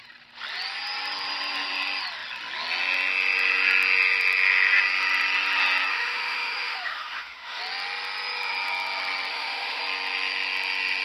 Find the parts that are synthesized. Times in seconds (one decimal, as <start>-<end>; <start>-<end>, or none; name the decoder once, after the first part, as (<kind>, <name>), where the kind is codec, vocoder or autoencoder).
5.9-7.6 (autoencoder, DAC-VAE); 9.3-9.8